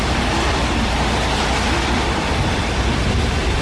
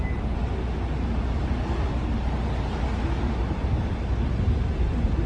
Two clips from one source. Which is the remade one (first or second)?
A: first